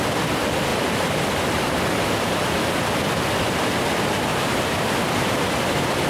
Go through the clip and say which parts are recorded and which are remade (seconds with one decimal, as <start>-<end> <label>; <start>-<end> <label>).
0.0-4.3 recorded; 4.3-5.5 remade; 5.5-6.1 recorded